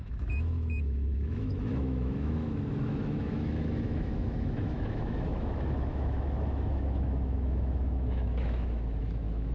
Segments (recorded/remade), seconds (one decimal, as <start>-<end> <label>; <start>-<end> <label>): 0.0-9.5 remade